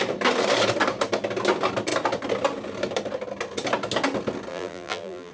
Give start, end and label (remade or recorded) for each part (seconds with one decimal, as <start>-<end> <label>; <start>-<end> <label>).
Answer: 0.0-4.5 recorded; 4.5-5.3 remade